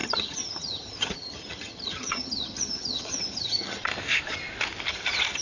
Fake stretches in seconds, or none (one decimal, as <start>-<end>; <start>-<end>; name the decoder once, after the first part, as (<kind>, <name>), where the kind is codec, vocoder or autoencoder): 0.0-3.9 (vocoder, HiFi-GAN); 4.9-5.4